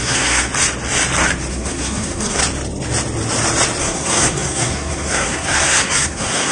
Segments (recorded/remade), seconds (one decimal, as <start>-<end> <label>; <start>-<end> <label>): 0.0-0.5 remade; 0.5-1.5 recorded; 1.5-2.4 remade; 2.4-3.8 recorded; 3.8-6.5 remade

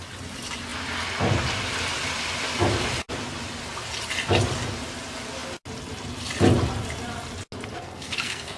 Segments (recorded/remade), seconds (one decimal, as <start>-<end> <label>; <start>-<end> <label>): 0.0-7.7 recorded; 7.7-8.6 remade

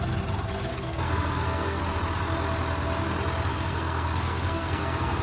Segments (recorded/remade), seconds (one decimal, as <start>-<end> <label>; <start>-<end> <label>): 0.0-0.7 recorded; 0.7-1.8 remade; 1.8-3.5 recorded; 3.5-5.2 remade

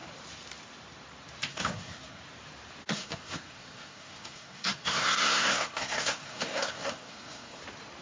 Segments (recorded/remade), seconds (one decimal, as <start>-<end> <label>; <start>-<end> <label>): 0.0-1.5 recorded; 1.5-2.2 remade; 2.2-2.9 recorded; 2.9-7.6 remade; 7.6-8.0 recorded

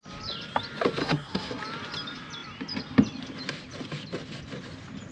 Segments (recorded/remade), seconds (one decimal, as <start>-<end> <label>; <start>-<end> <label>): 0.0-1.0 recorded; 1.0-1.6 remade; 1.6-5.1 recorded